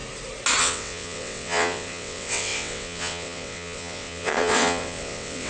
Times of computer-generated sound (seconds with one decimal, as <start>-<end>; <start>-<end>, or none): 0.6-5.5